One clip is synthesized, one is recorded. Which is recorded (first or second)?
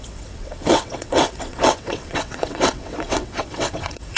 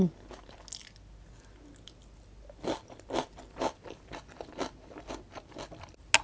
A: second